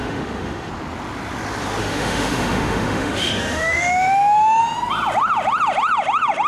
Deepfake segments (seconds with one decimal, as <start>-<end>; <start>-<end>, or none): 0.0-0.7; 1.8-4.6